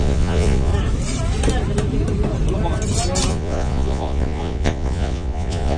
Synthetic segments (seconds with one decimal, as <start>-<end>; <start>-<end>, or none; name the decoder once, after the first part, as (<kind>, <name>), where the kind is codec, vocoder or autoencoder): 0.0-0.7 (vocoder, Vocos); 3.3-5.8